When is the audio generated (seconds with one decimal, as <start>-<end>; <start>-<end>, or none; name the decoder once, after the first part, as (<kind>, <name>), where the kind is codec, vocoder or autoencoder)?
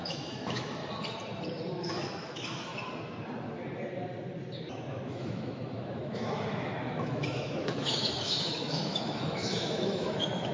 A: 0.0-0.8 (autoencoder, DAC-VAE); 1.7-2.7; 4.7-10.5